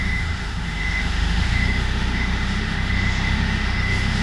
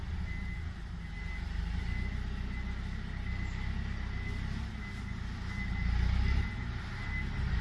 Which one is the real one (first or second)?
second